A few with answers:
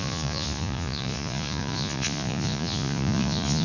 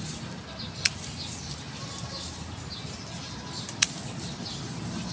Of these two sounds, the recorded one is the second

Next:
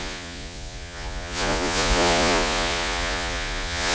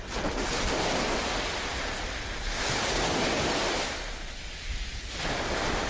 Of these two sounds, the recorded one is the second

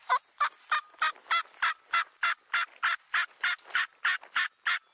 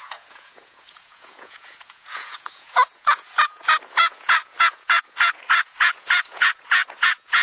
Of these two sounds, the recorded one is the first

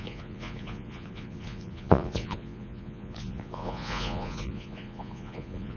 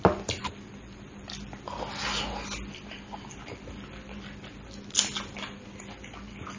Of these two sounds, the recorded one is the second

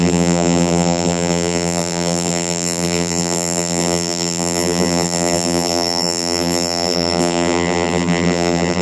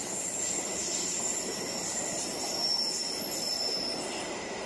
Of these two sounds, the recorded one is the second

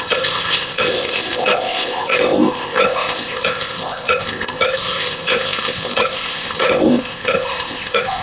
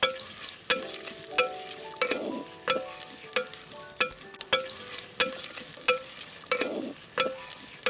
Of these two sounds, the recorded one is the second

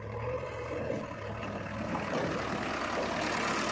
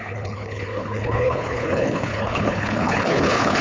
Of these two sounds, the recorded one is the first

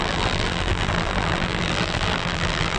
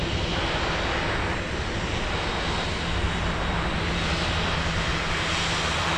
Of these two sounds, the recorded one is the second